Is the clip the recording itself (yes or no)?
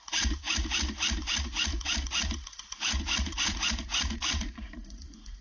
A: no